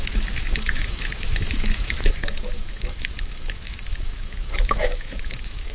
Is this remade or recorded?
remade